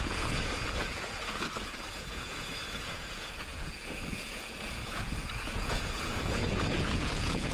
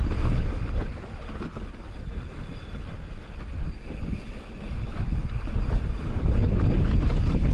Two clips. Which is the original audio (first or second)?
second